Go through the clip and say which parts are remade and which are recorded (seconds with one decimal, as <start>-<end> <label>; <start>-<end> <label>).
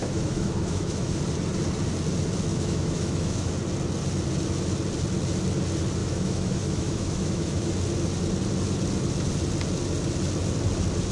0.0-1.2 remade; 1.2-2.5 recorded; 2.5-3.5 remade; 3.5-6.0 recorded; 6.0-7.7 remade; 7.7-11.1 recorded